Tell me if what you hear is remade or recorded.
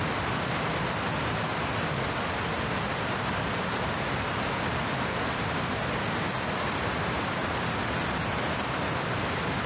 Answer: recorded